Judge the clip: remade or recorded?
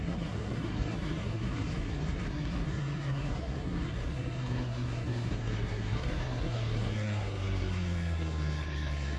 remade